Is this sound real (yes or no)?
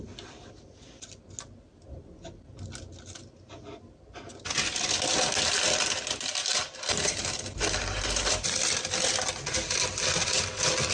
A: yes